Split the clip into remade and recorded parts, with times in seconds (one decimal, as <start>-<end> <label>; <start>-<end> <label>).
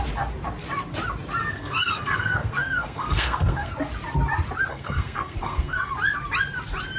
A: 0.0-1.4 recorded; 1.4-3.7 remade; 3.7-4.7 recorded; 4.7-5.9 remade; 5.9-7.0 recorded